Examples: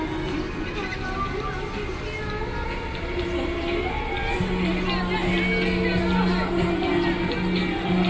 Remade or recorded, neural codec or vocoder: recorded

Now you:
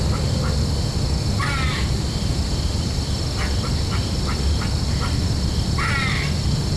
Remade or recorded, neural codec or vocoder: recorded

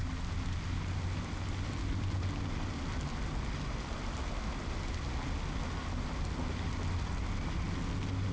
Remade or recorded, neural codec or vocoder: recorded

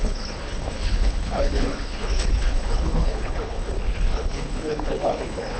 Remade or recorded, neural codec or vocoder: remade, codec, HILCodec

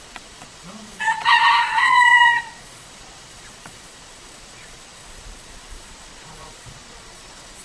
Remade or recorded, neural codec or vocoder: remade, vocoder, Vocos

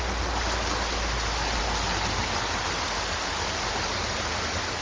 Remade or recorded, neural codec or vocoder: recorded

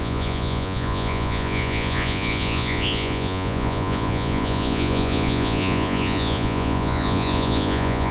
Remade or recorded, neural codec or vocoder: remade, vocoder, Vocos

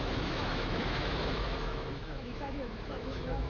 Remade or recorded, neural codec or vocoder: remade, autoencoder, DAC-VAE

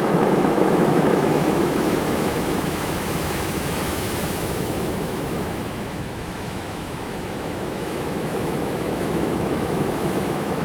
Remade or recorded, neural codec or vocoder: remade, autoencoder, DAC-VAE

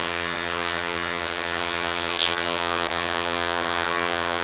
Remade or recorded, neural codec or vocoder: remade, vocoder, HiFi-GAN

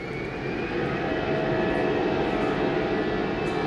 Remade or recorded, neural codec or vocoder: recorded